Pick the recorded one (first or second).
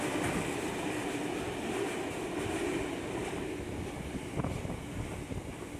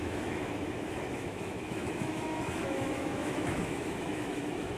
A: first